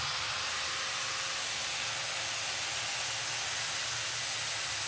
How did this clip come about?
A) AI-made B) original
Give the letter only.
B